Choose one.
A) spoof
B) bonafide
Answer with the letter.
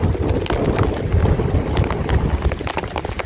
B